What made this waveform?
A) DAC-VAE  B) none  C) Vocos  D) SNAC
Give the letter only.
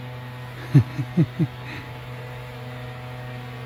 B